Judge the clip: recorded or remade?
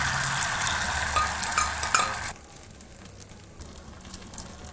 recorded